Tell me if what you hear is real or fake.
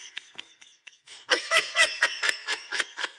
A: fake